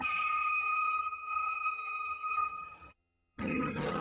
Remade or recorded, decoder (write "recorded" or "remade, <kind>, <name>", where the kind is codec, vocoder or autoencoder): remade, vocoder, HiFi-GAN